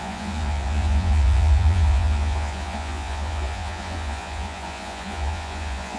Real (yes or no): no